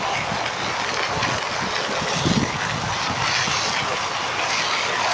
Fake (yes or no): no